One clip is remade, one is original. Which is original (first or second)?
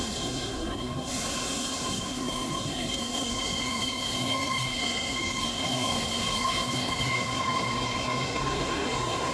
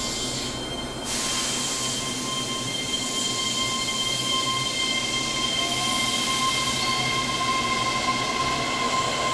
second